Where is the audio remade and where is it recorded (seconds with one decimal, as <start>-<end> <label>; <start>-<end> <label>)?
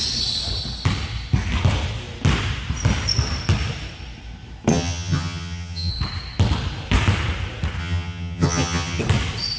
0.0-4.7 recorded; 4.7-5.9 remade; 5.9-7.8 recorded; 7.8-9.0 remade; 9.0-9.6 recorded